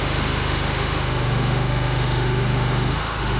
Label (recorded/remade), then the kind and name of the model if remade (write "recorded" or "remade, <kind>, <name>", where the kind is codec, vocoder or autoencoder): remade, autoencoder, DAC-VAE